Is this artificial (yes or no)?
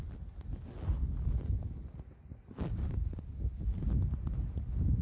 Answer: no